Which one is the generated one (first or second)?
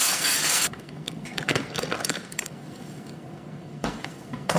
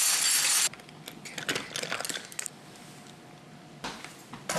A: first